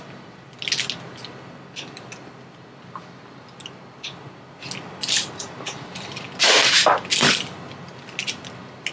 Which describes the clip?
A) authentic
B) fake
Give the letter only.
A